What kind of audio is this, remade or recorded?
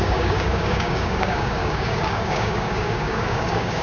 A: remade